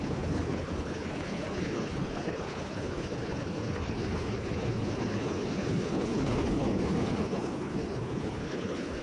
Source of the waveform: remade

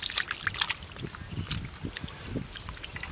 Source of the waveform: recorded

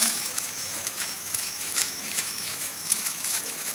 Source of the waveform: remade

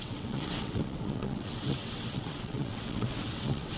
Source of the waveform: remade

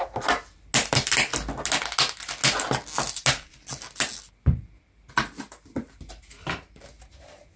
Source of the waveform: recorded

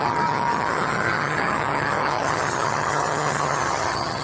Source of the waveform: remade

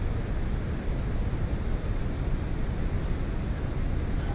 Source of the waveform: recorded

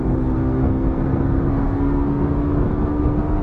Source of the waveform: remade